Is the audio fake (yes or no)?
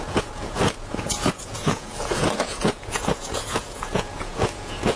yes